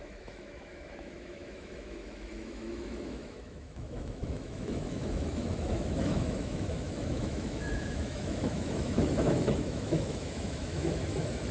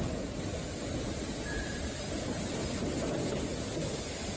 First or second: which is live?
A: second